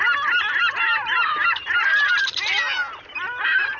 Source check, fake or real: fake